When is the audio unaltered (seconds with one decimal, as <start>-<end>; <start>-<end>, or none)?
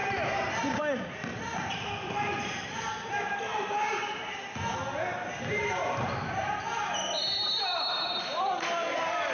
4.4-5.5